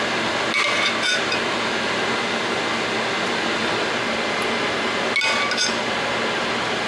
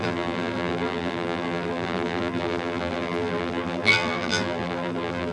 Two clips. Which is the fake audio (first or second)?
second